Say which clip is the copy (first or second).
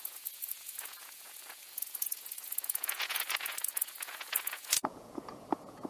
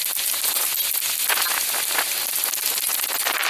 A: first